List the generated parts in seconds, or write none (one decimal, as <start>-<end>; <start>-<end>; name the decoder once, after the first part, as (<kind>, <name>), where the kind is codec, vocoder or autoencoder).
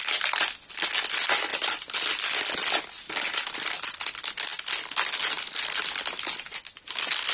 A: none